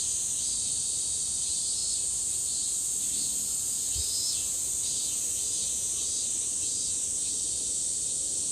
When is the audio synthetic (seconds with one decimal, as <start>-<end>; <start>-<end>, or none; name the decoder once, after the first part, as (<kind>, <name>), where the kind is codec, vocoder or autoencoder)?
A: 1.8-4.1 (vocoder, BigVGAN v2); 7.2-8.1